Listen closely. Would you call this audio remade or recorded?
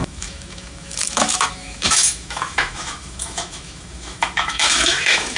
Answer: remade